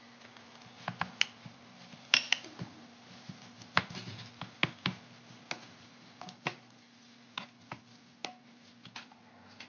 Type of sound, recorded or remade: recorded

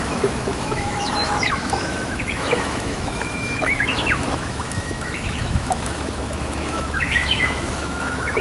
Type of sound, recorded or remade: remade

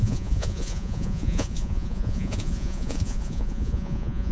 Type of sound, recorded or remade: remade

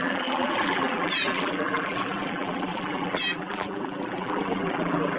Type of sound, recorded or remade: remade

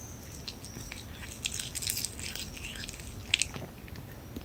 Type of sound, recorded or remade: recorded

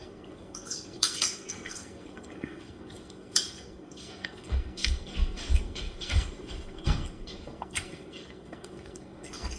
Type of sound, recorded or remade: remade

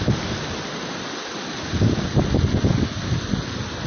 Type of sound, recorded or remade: recorded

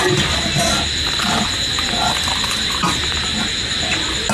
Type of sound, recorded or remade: recorded